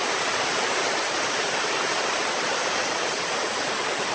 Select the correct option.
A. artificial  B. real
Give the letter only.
B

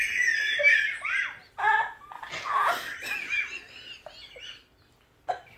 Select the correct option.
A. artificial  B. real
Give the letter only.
B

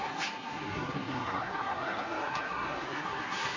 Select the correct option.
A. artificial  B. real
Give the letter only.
A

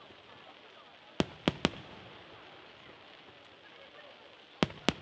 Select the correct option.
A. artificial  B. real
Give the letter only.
B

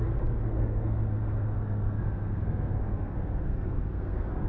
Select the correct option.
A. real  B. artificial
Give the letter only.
B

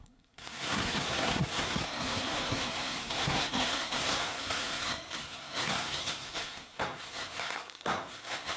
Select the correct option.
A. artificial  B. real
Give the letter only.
A